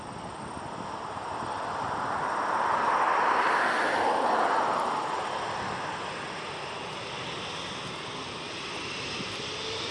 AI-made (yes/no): no